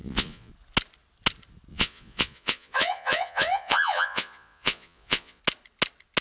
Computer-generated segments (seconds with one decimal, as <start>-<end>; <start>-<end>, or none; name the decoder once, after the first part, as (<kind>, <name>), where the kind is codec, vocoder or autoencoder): 0.0-0.5 (vocoder, Vocos); 1.7-5.4

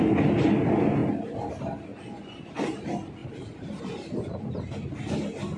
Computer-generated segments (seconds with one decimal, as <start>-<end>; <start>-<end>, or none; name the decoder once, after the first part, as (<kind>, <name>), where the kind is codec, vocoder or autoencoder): 1.9-2.5 (vocoder, Vocos)

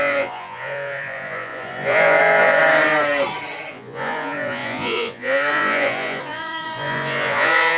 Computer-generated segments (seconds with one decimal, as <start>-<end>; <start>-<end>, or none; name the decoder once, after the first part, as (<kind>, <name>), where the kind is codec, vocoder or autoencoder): 0.0-2.6 (vocoder, Vocos); 3.7-7.8

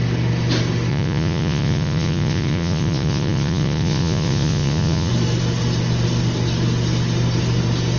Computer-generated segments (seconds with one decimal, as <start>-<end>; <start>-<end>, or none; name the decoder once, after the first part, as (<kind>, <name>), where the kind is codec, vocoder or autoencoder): 0.9-5.1 (vocoder, Vocos)